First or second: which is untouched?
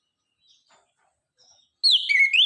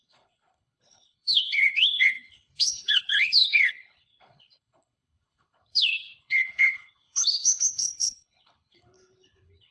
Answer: first